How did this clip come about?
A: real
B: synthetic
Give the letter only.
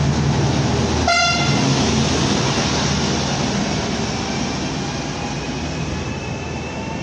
A